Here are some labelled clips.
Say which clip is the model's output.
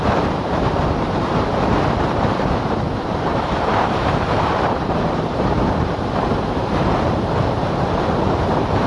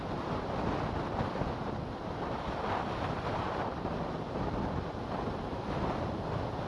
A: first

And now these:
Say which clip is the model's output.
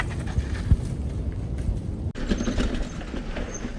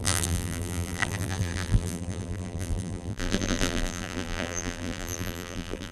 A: second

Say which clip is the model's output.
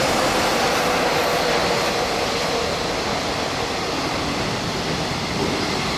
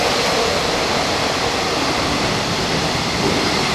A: second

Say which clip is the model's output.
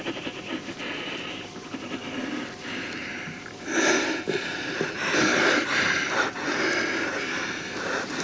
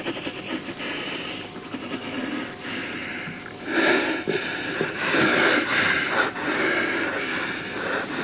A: first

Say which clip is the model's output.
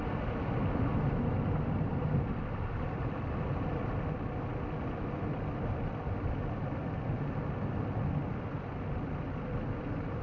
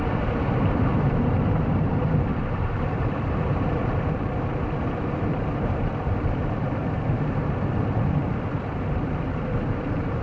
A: second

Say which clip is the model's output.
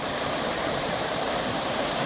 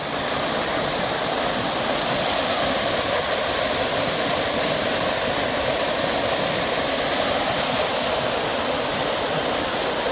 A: first